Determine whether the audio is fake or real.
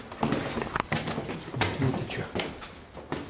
real